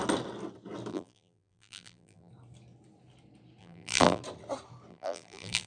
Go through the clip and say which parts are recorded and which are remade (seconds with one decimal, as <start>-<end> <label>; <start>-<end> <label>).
0.0-0.9 recorded; 0.9-2.3 remade; 2.3-3.6 recorded; 3.6-4.2 remade; 4.2-4.9 recorded; 4.9-5.7 remade